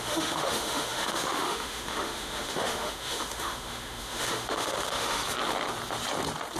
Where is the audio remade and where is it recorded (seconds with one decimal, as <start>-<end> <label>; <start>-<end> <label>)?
0.0-5.2 remade; 5.2-6.6 recorded